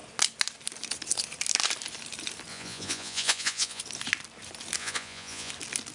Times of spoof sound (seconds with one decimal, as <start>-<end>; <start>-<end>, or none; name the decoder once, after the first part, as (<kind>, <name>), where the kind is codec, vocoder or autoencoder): 2.5-3.8 (vocoder, Vocos); 4.8-5.5